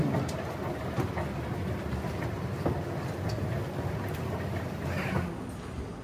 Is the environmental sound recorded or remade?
recorded